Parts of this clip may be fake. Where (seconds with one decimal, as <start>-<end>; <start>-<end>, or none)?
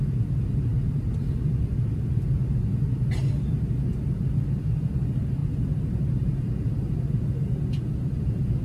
none